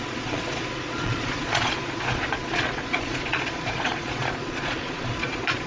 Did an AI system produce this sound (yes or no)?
yes